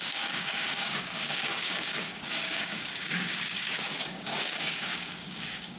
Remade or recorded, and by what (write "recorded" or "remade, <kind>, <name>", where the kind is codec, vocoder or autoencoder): remade, codec, DAC